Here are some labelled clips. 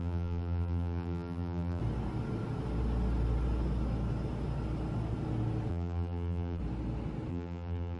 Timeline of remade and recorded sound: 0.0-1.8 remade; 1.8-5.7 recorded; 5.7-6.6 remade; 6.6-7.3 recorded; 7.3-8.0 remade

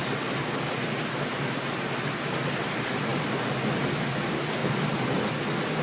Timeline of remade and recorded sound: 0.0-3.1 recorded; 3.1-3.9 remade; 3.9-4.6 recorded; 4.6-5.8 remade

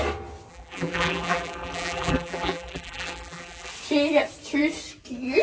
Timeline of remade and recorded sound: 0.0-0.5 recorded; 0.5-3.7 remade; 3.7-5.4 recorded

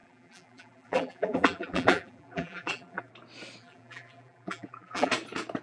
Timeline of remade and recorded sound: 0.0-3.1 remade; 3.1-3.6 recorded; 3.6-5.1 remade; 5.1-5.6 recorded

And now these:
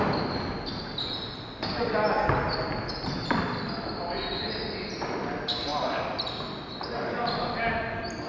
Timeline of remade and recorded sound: 0.0-8.3 recorded

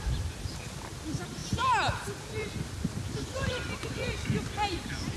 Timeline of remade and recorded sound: 0.0-5.2 recorded

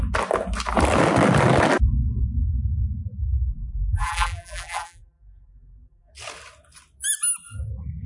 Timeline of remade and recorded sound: 0.0-3.5 recorded; 3.5-6.1 remade; 6.1-8.1 recorded

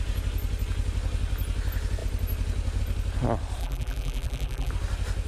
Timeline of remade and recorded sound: 0.0-3.6 recorded; 3.6-4.7 remade; 4.7-5.3 recorded